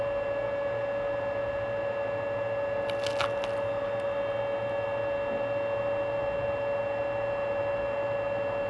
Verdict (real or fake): real